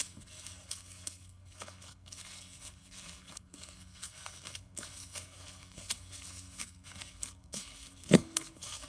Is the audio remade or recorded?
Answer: remade